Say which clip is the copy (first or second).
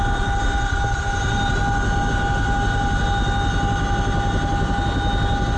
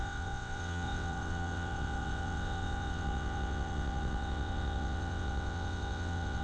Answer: second